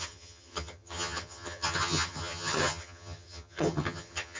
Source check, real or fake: fake